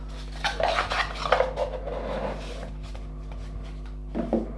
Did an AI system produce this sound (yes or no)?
no